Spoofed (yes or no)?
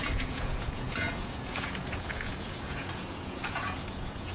yes